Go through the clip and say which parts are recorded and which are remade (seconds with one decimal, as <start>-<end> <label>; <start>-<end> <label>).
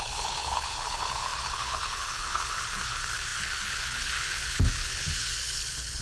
0.0-6.0 remade